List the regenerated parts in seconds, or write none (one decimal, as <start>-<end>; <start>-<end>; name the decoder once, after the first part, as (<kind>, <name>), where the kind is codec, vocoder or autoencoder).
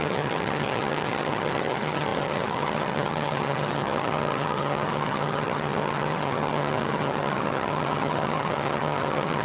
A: 0.0-9.4 (vocoder, HiFi-GAN)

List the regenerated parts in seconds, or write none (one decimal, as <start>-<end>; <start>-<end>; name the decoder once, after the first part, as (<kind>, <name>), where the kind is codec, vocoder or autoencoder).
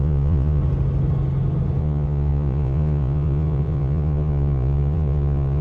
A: 0.0-0.6 (vocoder, Vocos); 1.8-5.6